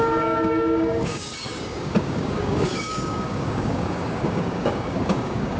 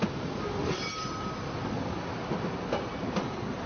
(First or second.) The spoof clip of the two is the first